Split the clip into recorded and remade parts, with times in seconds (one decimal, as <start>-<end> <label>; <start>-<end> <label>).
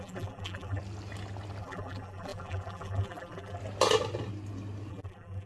0.0-0.8 remade; 0.8-1.6 recorded; 1.6-3.6 remade; 3.6-4.9 recorded; 4.9-5.5 remade